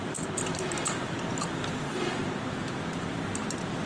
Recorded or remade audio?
recorded